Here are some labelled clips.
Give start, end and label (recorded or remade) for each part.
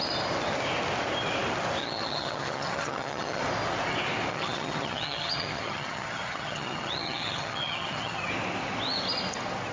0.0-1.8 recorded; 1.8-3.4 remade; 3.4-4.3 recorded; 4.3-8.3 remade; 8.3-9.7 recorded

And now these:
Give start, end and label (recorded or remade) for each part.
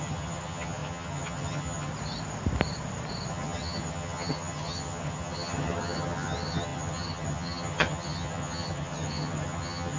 0.0-1.9 remade; 1.9-3.3 recorded; 3.3-10.0 remade